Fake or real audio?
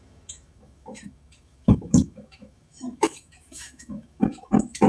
fake